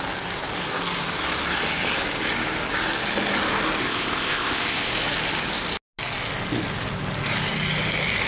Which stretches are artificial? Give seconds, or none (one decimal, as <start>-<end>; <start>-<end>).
3.8-4.9